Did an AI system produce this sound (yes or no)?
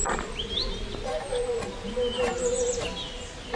no